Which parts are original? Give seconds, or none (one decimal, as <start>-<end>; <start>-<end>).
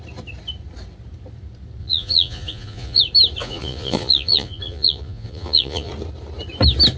0.0-1.8; 3.0-3.4; 5.9-7.0